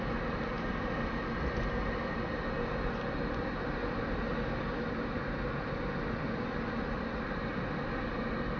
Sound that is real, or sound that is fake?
real